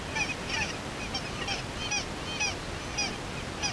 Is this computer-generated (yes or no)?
no